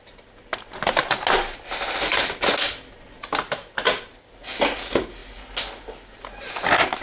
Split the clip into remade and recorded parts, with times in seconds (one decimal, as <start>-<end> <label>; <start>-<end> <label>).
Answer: 0.0-7.0 recorded